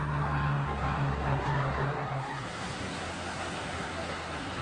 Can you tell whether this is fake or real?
fake